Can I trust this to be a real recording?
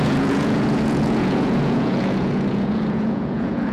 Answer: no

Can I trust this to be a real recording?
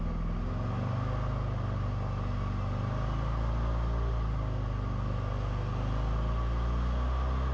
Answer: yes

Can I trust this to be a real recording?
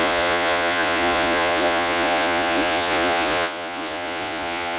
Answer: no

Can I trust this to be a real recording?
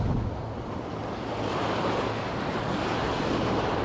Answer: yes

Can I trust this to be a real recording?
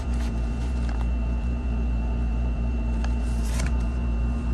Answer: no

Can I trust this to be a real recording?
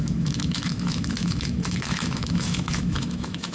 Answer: no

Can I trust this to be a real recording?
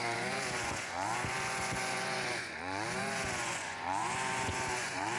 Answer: no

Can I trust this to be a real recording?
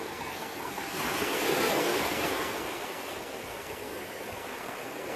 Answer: no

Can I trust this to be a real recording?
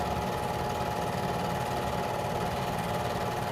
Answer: yes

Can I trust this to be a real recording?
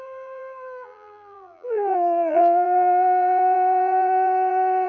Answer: no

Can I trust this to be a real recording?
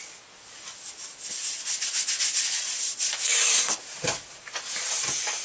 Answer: yes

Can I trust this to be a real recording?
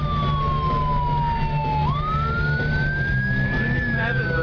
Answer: yes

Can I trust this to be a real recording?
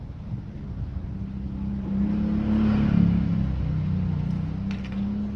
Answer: yes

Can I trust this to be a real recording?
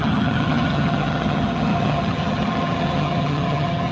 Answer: no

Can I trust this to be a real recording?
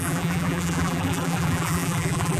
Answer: no